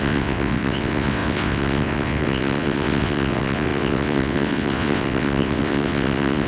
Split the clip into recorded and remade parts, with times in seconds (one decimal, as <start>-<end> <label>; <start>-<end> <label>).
0.0-6.5 remade